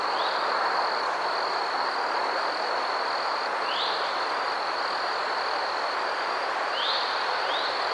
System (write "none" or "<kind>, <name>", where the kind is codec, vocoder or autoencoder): vocoder, BigVGAN v2